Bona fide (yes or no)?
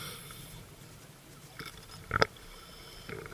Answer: yes